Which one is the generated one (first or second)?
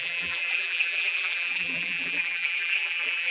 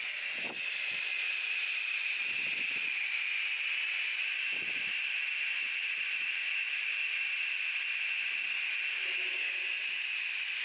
first